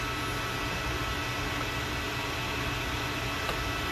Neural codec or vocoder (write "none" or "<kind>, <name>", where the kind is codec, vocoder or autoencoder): none